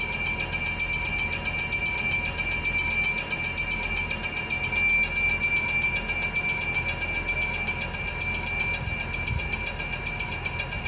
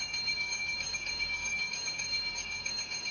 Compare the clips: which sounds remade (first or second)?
second